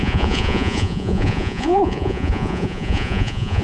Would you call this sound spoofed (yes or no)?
yes